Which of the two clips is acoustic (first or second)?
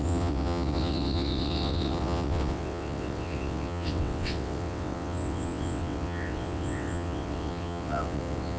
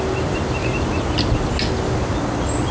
second